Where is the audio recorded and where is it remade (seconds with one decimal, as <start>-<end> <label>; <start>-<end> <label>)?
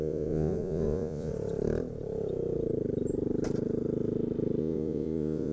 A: 0.0-1.3 remade; 1.3-4.6 recorded; 4.6-5.5 remade